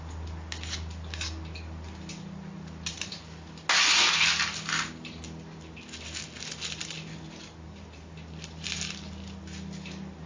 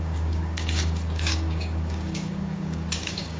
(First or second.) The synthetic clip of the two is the second